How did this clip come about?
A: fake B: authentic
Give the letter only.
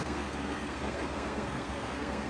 A